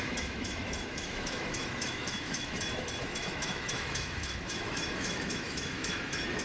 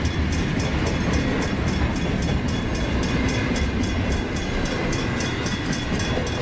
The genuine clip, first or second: second